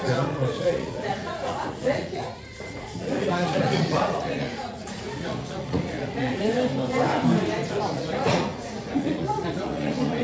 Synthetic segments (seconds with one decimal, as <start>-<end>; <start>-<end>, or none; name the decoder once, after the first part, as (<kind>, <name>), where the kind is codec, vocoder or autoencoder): 0.0-6.5 (vocoder, Vocos); 7.9-10.2